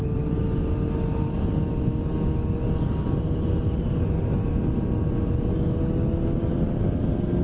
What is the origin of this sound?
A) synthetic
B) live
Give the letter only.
B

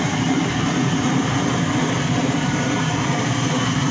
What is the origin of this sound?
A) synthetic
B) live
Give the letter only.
A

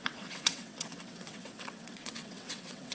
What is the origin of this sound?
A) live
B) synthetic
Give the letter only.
B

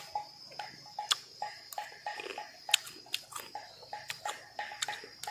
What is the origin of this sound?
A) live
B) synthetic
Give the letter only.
A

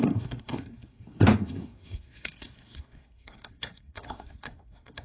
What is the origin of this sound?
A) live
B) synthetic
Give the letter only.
B